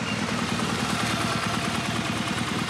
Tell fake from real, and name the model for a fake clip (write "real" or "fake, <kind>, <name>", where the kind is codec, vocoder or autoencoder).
real